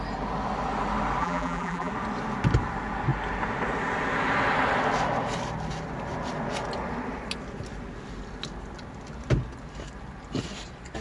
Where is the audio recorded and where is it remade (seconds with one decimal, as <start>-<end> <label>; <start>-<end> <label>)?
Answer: 0.0-1.2 recorded; 1.2-1.9 remade; 1.9-11.0 recorded